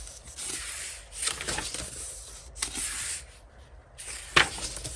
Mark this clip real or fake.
real